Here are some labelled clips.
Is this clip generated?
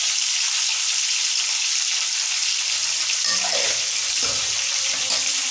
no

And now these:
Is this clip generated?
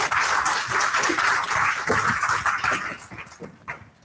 no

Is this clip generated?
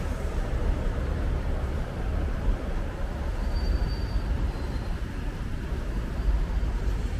yes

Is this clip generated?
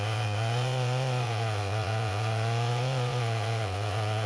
yes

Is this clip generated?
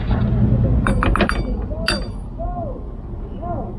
no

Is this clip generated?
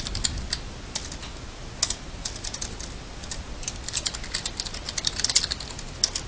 no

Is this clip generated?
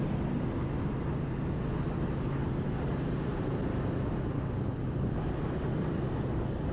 no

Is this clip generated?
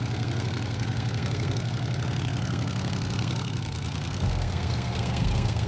yes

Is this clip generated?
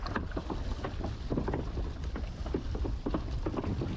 no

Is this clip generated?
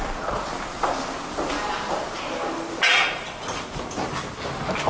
no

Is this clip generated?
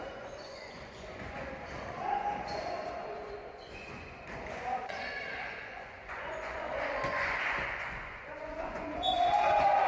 yes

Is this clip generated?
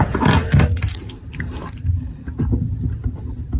no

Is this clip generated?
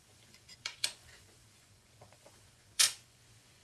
yes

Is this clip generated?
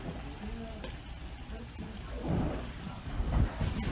no